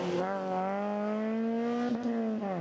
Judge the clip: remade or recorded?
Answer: recorded